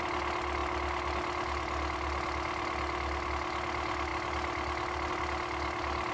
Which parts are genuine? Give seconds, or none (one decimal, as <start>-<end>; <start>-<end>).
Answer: 0.0-6.1